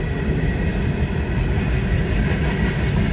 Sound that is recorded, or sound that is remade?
recorded